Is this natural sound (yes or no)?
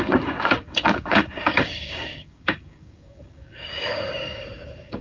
no